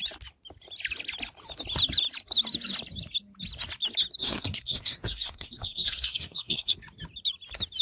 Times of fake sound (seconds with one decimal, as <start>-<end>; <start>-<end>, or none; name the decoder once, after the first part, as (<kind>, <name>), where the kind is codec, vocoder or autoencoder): 4.2-6.8 (codec, SNAC)